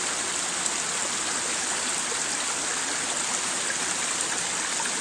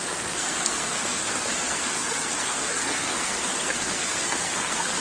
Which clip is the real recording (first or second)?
first